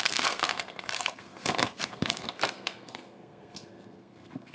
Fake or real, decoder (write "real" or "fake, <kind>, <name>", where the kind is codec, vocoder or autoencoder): fake, codec, SNAC